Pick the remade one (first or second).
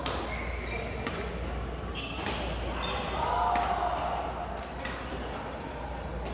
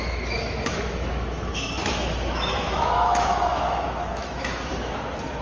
second